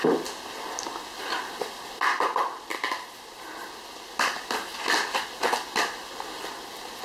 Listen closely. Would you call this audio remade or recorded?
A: recorded